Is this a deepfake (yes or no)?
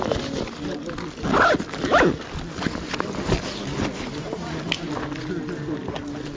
no